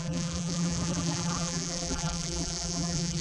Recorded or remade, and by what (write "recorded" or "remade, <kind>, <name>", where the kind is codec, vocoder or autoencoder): remade, vocoder, BigVGAN v2